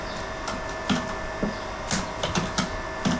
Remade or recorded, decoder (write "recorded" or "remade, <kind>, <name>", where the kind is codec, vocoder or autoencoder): recorded